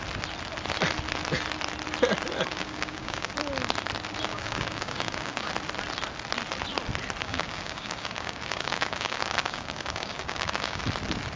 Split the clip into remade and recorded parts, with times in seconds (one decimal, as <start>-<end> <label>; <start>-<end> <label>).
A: 0.0-2.5 recorded; 2.5-3.3 remade; 3.3-4.3 recorded; 4.3-5.5 remade; 5.5-7.2 recorded; 7.2-10.8 remade; 10.8-11.4 recorded